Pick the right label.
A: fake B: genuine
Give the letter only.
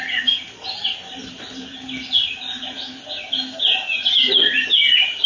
B